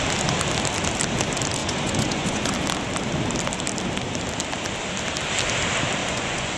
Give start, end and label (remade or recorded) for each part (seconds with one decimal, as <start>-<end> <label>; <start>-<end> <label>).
0.0-1.6 recorded; 1.6-2.5 remade; 2.5-6.0 recorded; 6.0-6.6 remade